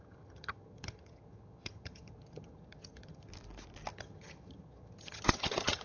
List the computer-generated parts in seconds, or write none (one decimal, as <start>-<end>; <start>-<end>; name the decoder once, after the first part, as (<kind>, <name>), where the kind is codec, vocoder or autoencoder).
0.0-3.3 (vocoder, HiFi-GAN); 3.9-5.8